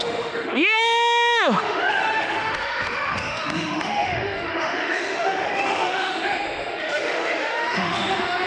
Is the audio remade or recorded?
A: remade